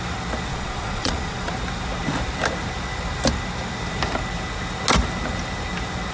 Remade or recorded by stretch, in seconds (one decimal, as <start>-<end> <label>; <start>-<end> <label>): 0.0-0.5 recorded; 0.5-1.5 remade; 1.5-6.1 recorded